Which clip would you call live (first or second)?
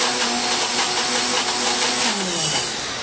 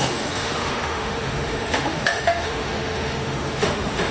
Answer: first